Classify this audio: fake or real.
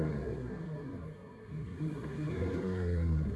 fake